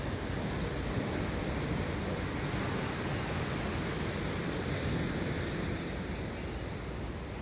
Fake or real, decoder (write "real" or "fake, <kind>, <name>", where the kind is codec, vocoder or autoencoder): real